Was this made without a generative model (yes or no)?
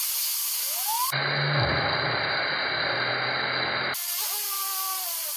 yes